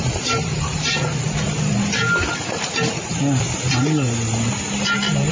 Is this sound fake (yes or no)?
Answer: no